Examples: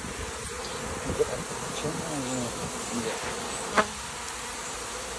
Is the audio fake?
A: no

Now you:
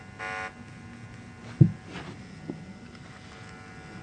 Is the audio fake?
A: no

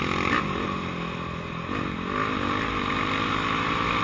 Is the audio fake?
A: no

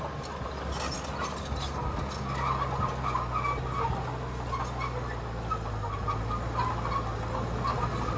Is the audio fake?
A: no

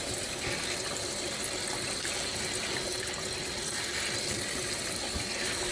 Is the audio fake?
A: no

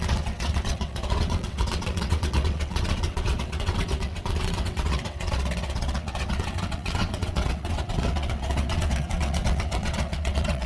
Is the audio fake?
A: yes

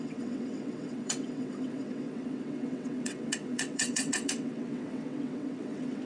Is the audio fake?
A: yes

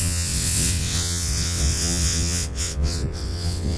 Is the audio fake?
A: yes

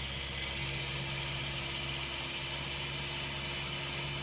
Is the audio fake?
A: no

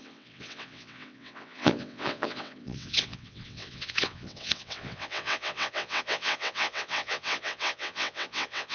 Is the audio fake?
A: yes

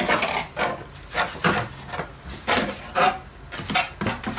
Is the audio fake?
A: no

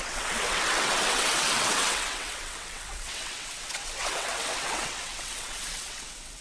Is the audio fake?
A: yes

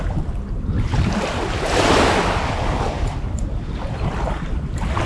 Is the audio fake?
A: no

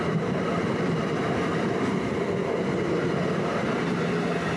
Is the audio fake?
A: no